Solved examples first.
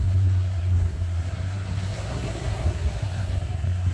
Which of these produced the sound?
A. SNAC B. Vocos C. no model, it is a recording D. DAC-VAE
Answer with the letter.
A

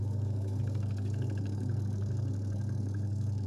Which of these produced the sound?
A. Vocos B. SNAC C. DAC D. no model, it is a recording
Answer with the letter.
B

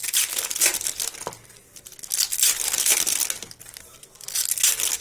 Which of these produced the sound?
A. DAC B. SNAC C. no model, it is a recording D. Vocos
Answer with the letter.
C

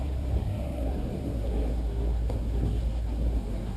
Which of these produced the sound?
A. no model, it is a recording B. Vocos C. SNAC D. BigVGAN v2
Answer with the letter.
C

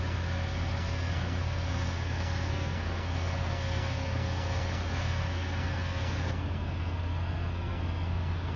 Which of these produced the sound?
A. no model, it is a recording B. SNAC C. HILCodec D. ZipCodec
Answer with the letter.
B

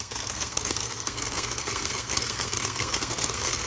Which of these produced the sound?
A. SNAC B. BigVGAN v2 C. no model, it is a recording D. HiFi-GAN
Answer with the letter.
A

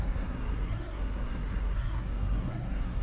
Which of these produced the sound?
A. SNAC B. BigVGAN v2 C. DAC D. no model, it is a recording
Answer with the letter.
A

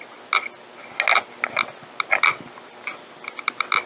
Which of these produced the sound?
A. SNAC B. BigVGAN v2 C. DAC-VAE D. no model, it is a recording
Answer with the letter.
D